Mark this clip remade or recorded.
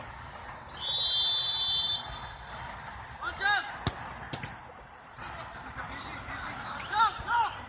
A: recorded